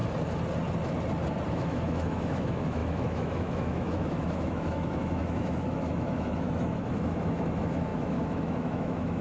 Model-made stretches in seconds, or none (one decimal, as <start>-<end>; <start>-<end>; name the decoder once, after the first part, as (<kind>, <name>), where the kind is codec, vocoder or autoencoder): 1.5-9.2 (autoencoder, DAC-VAE)